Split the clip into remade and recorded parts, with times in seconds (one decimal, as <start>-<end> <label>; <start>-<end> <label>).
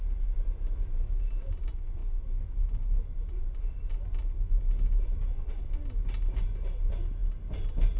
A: 0.0-8.0 recorded